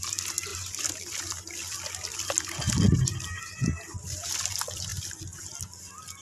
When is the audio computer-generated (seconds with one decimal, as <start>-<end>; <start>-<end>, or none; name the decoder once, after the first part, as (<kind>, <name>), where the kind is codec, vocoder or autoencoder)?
none